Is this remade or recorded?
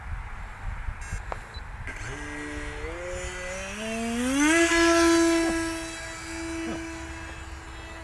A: recorded